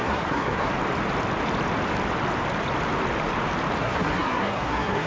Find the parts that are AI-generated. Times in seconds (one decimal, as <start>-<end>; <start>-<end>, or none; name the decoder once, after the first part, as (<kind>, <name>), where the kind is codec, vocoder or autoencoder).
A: 0.0-0.7 (codec, SNAC); 3.8-5.1